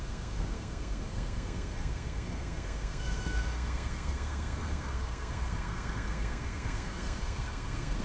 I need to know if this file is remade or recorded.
remade